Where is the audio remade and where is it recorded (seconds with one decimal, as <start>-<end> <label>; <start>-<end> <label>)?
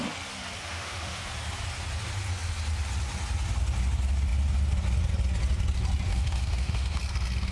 0.0-0.6 recorded; 0.6-1.3 remade; 1.3-6.1 recorded; 6.1-7.0 remade; 7.0-7.5 recorded